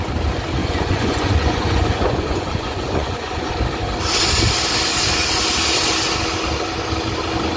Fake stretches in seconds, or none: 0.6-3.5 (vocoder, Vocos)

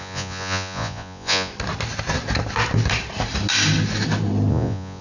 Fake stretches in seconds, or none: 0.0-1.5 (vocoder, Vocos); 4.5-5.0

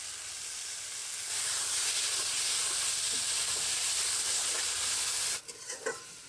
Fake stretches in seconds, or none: none

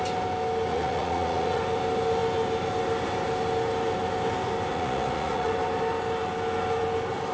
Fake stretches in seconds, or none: 0.7-1.6 (vocoder, Vocos); 4.7-5.5

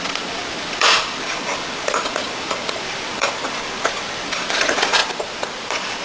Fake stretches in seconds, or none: 0.0-6.0 (vocoder, Vocos)

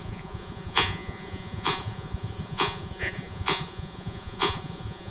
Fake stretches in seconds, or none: 0.0-5.1 (vocoder, Vocos)

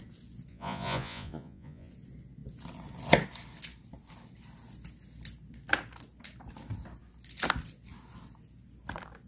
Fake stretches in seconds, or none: 0.5-1.9 (vocoder, Vocos)

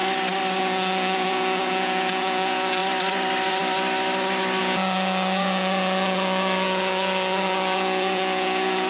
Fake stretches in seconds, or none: 0.6-2.8 (vocoder, Vocos); 4.6-8.9